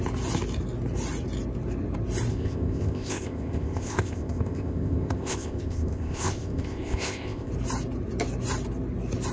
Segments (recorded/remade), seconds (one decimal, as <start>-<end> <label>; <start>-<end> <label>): 0.0-2.3 recorded; 2.3-7.5 remade; 7.5-9.3 recorded